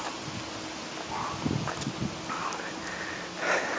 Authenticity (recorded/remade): recorded